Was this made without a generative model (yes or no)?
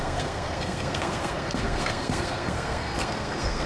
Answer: no